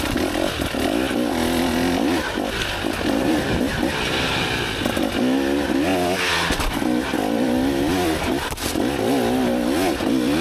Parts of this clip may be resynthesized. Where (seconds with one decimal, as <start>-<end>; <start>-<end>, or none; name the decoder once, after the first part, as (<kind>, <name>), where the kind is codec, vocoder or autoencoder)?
none